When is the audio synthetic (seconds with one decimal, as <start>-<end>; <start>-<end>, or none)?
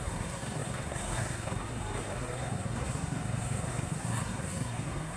0.0-5.2